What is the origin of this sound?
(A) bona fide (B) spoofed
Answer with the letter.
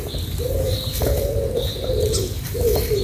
A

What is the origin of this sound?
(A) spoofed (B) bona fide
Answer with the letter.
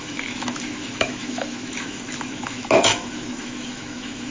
A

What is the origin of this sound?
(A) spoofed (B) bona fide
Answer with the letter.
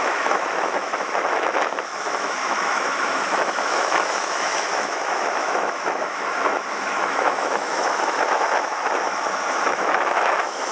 A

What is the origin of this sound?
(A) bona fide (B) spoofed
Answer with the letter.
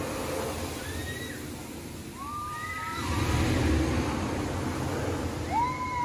A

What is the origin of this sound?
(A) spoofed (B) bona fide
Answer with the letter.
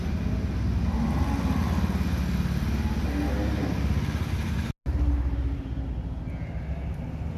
B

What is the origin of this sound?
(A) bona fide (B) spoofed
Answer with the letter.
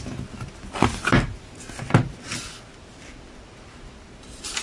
A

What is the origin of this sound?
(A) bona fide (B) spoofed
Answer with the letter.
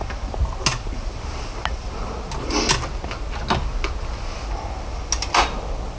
A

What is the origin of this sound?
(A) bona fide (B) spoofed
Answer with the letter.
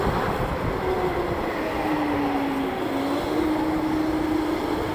A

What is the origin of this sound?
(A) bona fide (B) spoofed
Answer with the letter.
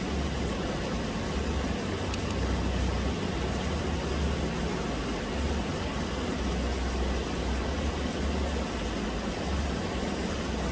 A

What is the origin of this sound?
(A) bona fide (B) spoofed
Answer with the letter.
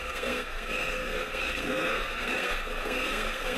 B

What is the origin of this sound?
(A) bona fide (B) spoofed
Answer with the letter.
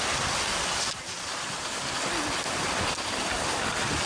A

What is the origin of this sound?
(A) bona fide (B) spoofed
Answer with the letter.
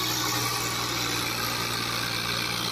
A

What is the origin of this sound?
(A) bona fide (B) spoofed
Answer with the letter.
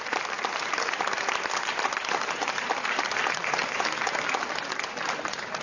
A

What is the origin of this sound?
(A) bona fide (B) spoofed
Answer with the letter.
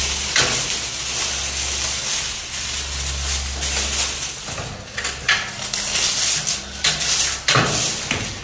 A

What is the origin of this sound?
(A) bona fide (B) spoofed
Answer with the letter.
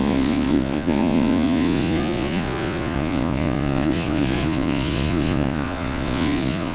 B